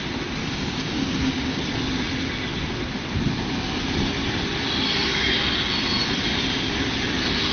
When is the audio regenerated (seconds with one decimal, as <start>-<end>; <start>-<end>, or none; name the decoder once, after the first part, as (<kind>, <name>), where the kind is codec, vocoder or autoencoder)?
0.4-1.6 (codec, DAC)

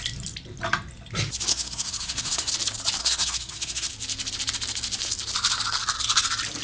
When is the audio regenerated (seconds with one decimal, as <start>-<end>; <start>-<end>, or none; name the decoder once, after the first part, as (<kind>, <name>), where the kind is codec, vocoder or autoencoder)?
1.5-2.5 (codec, SNAC); 3.0-3.9

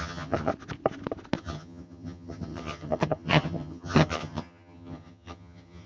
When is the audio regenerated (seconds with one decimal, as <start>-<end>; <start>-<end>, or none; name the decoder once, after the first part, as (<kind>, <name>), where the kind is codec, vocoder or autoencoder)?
0.0-0.5 (vocoder, HiFi-GAN); 1.4-5.9

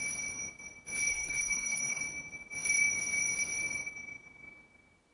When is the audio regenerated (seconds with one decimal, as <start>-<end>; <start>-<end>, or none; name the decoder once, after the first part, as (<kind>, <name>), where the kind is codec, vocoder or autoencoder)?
1.1-2.0 (codec, SNAC)

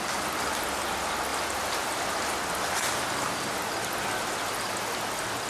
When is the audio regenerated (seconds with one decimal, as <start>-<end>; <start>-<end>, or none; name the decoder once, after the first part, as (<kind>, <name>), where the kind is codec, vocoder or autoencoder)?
none